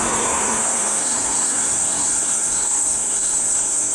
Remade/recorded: remade